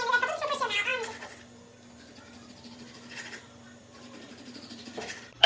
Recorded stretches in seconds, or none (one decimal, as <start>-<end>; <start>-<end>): 0.9-2.5